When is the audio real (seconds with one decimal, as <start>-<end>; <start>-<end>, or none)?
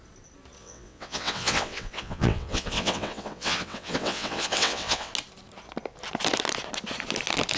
0.0-0.6; 5.1-7.6